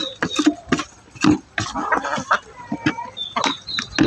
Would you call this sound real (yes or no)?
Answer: yes